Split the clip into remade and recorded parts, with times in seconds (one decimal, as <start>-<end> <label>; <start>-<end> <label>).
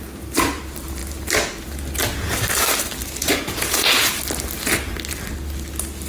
0.0-3.2 recorded; 3.2-4.2 remade; 4.2-6.1 recorded